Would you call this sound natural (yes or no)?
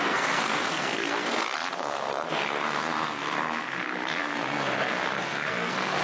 no